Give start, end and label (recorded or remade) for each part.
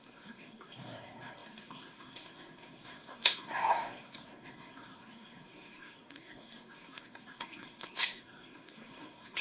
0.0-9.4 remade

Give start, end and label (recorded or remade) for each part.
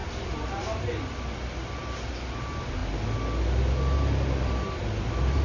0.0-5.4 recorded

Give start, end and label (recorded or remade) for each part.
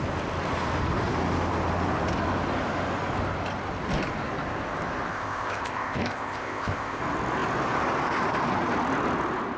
0.0-5.1 recorded; 5.1-7.0 remade; 7.0-9.6 recorded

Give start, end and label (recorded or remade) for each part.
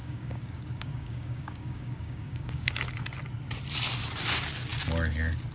0.0-2.7 remade; 2.7-5.5 recorded